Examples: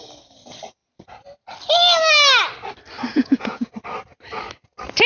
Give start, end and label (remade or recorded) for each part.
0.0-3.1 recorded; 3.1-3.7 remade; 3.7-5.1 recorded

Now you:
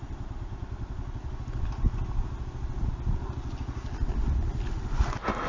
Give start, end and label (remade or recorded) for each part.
0.0-5.5 recorded

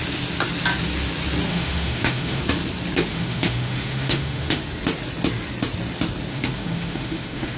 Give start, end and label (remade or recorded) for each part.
0.0-1.5 recorded; 1.5-2.4 remade; 2.4-3.1 recorded; 3.1-4.6 remade; 4.6-6.3 recorded; 6.3-7.6 remade

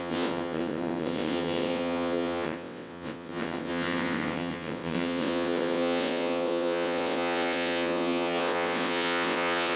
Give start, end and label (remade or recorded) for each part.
0.0-9.8 remade

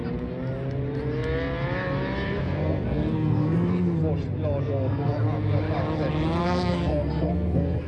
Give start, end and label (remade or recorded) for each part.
0.0-2.4 recorded; 2.4-4.0 remade; 4.0-4.6 recorded; 4.6-5.1 remade; 5.1-6.4 recorded; 6.4-7.9 remade